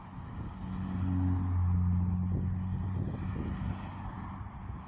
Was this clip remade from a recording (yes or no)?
no